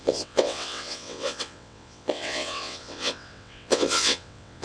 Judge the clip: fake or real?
fake